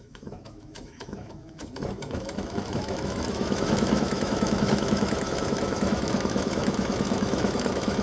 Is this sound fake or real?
fake